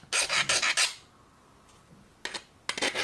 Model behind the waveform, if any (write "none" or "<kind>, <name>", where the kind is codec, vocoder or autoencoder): none